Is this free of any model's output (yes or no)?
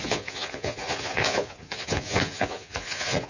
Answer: no